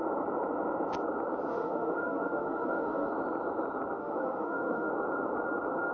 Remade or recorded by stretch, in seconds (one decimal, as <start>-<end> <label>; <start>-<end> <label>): 0.0-1.5 recorded; 1.5-3.1 remade; 3.1-4.0 recorded; 4.0-4.9 remade; 4.9-5.9 recorded

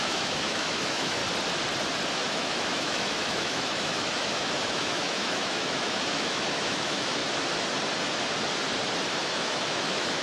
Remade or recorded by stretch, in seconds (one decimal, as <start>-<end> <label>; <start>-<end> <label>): 0.0-1.2 remade; 1.2-2.3 recorded; 2.3-7.2 remade; 7.2-9.2 recorded; 9.2-10.2 remade

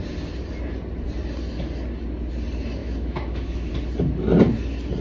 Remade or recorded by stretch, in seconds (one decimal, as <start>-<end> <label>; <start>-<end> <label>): 0.0-2.8 recorded; 2.8-3.7 remade; 3.7-5.0 recorded

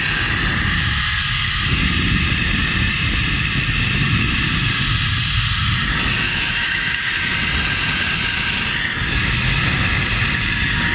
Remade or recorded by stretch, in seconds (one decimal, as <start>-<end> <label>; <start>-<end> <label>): 0.0-6.3 recorded; 6.3-7.0 remade; 7.0-10.9 recorded